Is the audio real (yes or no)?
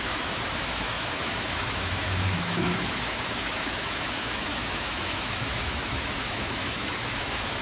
no